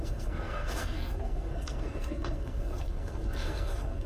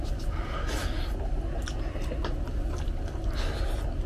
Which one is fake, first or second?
first